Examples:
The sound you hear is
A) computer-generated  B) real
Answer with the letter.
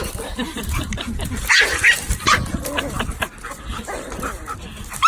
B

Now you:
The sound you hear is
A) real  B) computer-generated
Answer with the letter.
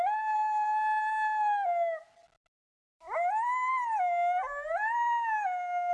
A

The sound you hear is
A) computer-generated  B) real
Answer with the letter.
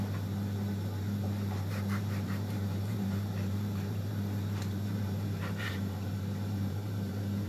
A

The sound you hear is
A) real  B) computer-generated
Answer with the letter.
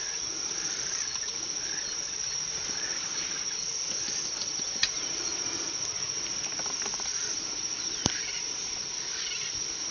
A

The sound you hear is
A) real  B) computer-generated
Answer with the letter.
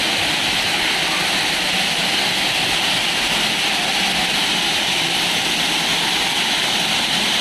A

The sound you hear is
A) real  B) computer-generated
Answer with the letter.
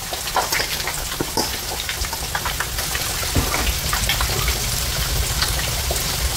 A